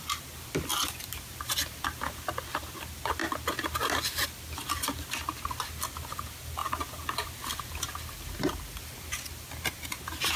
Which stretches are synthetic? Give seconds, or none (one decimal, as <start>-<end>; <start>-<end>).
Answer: 0.0-3.2; 5.1-10.4